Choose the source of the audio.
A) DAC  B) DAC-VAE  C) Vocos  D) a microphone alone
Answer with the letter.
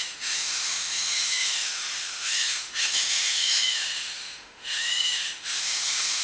B